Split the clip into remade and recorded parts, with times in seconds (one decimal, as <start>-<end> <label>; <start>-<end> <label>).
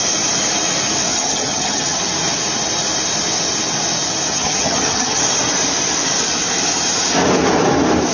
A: 0.0-1.1 recorded; 1.1-2.0 remade; 2.0-4.3 recorded; 4.3-5.2 remade; 5.2-8.1 recorded